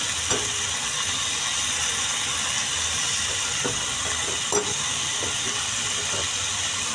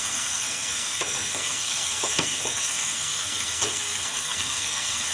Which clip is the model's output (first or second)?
second